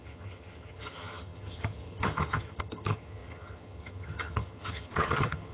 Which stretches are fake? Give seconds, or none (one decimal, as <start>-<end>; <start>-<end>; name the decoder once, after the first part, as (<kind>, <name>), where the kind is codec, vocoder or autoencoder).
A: 0.0-5.5 (vocoder, HiFi-GAN)

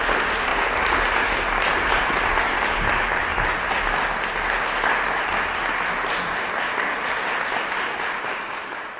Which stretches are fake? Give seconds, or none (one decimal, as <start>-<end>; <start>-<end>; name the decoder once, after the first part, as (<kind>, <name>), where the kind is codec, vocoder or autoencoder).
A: 0.0-3.3 (vocoder, BigVGAN v2); 7.8-9.0